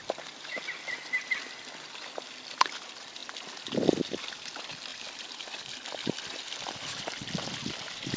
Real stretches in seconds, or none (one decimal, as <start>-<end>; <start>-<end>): 0.0-8.2